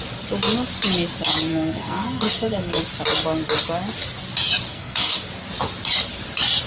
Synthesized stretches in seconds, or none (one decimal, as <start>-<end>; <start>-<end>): 1.5-2.8; 4.7-5.2